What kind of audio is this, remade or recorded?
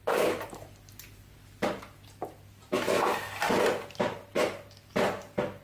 recorded